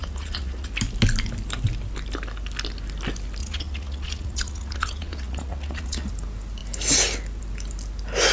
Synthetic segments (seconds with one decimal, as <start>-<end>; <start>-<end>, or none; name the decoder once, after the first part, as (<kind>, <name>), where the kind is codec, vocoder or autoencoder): 0.0-0.7 (vocoder, Vocos); 3.4-6.1